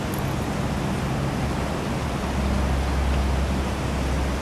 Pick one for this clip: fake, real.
real